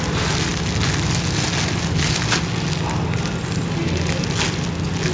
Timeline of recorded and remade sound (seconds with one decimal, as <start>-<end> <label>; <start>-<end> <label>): 0.0-5.1 recorded